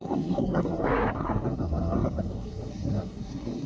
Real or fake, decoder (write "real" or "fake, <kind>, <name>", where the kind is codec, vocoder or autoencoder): fake, codec, SNAC